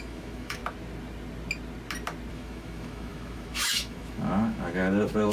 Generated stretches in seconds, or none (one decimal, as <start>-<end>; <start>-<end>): 0.0-0.6; 2.3-5.3